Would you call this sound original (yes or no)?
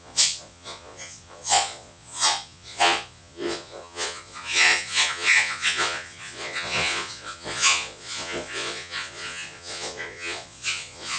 no